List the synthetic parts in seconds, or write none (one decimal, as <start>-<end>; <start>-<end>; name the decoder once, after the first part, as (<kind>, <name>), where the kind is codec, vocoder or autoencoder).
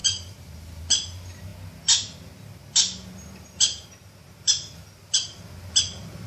0.0-0.8 (vocoder, BigVGAN v2)